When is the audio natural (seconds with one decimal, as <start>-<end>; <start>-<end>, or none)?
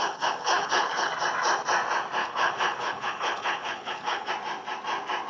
1.1-2.2; 4.3-5.3